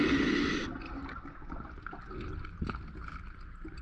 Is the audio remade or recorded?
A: recorded